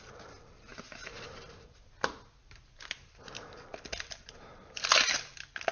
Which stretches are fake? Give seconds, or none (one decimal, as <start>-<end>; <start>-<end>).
0.0-0.7; 2.9-5.7